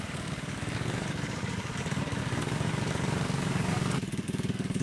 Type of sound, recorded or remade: remade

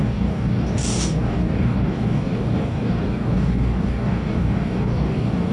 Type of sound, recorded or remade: remade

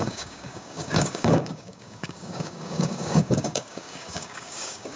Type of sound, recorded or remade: remade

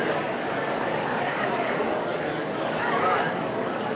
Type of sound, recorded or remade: remade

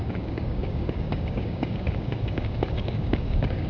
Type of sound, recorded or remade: remade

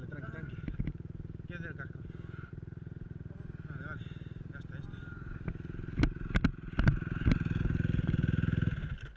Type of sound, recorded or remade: recorded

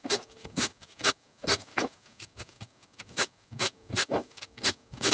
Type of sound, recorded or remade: remade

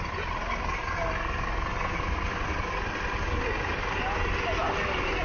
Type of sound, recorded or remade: recorded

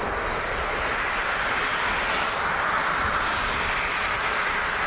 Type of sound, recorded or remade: recorded